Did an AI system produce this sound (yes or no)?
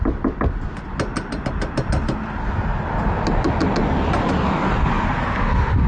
no